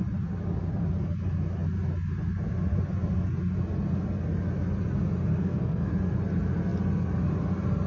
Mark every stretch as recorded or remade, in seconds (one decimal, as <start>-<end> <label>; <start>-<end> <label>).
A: 0.0-5.4 recorded; 5.4-5.9 remade; 5.9-7.9 recorded